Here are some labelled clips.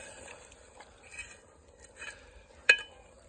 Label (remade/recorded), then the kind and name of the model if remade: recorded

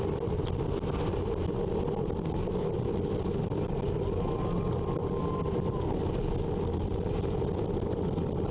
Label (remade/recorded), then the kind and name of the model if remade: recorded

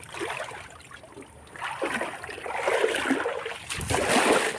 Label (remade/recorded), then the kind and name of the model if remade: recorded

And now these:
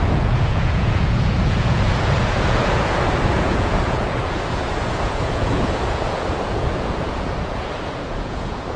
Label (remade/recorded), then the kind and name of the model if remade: remade, vocoder, Vocos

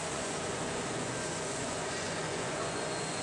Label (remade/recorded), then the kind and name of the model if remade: remade, vocoder, Vocos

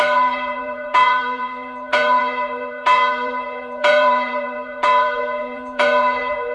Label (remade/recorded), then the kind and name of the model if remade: remade, vocoder, Vocos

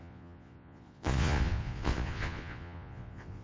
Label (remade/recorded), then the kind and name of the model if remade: remade, vocoder, Vocos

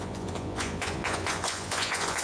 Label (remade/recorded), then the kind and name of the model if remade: remade, vocoder, Vocos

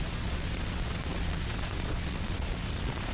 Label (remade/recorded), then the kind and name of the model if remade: remade, vocoder, Vocos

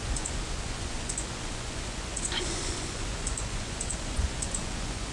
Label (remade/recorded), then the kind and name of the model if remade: remade, vocoder, Vocos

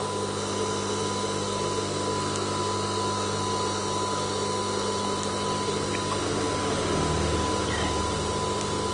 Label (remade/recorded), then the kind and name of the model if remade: recorded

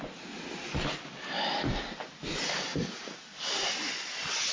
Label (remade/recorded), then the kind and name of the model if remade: recorded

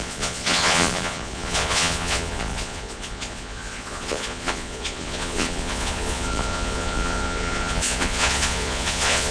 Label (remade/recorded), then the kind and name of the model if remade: remade, vocoder, Vocos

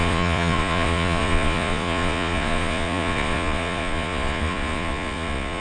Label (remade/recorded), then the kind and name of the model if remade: remade, vocoder, Vocos